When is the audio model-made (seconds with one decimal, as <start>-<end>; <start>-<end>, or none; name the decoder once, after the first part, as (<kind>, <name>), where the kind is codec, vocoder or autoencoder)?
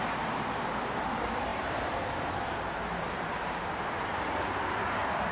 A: 0.0-5.3 (vocoder, BigVGAN v2)